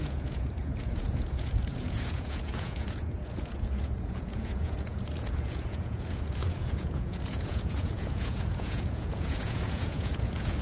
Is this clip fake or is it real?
fake